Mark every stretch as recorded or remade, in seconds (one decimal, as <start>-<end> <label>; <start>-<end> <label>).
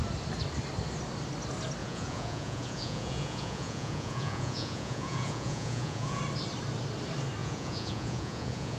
0.0-1.8 recorded; 1.8-6.2 remade; 6.2-7.4 recorded; 7.4-8.8 remade